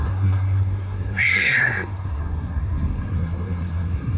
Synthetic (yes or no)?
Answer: yes